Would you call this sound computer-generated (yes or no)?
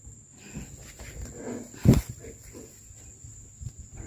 no